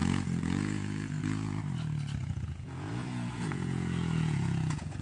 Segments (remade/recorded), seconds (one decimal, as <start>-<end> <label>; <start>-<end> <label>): 0.0-1.6 remade; 1.6-2.2 recorded; 2.2-5.0 remade